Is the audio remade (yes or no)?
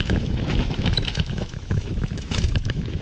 yes